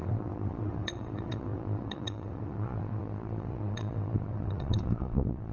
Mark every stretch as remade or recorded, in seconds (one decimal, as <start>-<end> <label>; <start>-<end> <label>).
0.0-5.5 remade